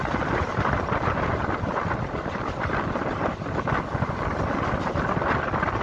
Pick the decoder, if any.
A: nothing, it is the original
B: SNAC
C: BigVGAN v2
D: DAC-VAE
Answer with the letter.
A